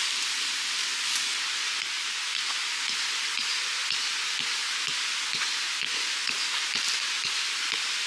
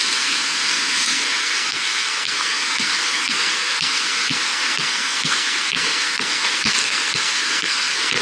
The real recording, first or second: first